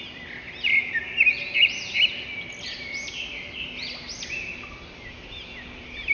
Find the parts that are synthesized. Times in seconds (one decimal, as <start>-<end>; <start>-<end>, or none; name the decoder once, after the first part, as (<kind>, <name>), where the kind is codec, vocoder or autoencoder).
none